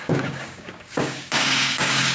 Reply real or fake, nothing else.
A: fake